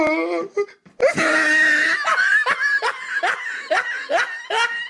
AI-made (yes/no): no